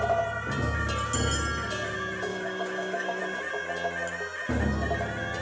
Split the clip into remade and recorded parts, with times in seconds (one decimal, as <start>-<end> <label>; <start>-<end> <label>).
0.0-2.3 recorded; 2.3-3.2 remade; 3.2-5.4 recorded